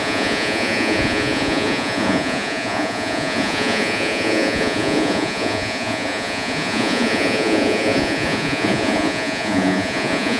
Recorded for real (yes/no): no